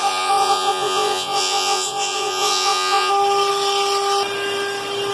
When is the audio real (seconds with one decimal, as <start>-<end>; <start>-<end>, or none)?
3.1-5.1